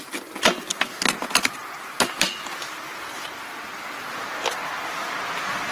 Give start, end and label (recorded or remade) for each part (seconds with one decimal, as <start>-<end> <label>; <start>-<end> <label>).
0.0-5.7 recorded